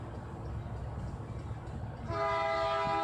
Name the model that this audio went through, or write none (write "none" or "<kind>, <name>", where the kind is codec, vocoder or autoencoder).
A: none